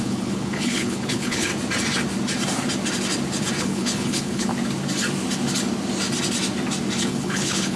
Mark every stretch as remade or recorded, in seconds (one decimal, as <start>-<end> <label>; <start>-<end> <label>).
0.0-1.5 remade; 1.5-3.6 recorded; 3.6-4.5 remade; 4.5-7.0 recorded; 7.0-7.8 remade